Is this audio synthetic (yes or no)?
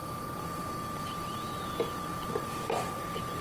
no